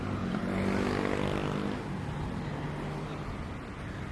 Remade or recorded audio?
recorded